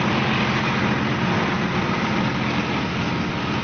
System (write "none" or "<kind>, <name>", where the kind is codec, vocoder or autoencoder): none